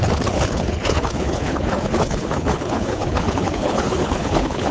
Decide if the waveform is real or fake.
fake